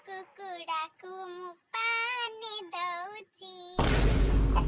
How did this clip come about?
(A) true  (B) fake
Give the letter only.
A